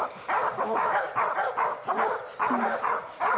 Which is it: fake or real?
real